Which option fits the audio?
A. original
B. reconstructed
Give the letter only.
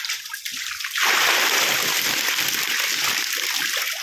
B